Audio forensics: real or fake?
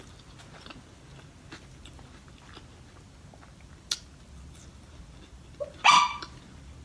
real